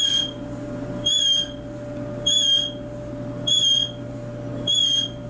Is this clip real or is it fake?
real